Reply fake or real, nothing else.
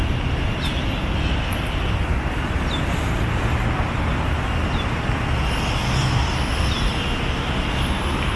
real